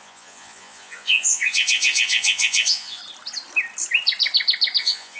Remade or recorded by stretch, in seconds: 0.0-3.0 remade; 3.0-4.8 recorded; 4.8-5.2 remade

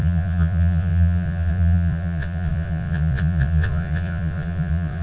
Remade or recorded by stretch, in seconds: 0.0-5.0 remade

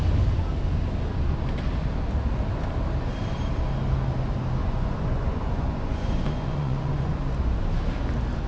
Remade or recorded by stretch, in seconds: 0.0-4.6 recorded; 4.6-7.1 remade; 7.1-8.5 recorded

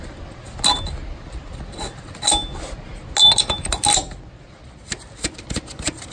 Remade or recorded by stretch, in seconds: 0.0-6.1 recorded

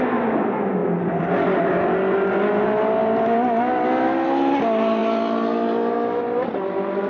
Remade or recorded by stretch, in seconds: 0.0-7.1 recorded

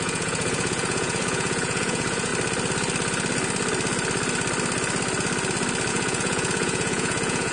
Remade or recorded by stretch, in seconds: 0.0-2.3 remade; 2.3-5.9 recorded; 5.9-7.5 remade

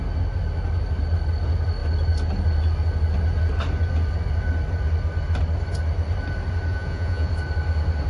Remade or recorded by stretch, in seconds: 0.0-6.7 recorded; 6.7-7.3 remade; 7.3-8.1 recorded

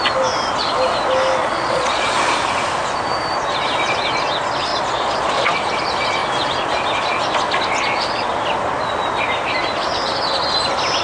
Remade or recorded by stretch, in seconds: 0.0-1.4 recorded; 1.4-2.1 remade; 2.1-4.7 recorded; 4.7-5.5 remade; 5.5-11.0 recorded